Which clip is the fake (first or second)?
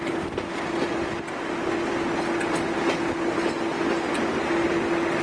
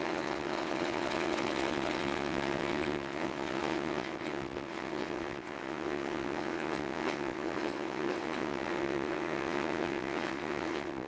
second